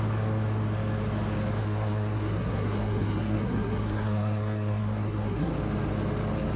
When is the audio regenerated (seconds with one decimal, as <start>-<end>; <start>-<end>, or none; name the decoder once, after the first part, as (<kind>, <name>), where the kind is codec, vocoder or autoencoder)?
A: 1.6-5.5 (codec, SNAC)